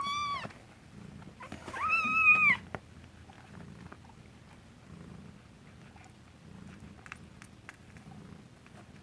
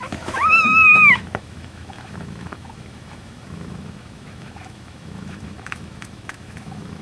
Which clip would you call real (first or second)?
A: first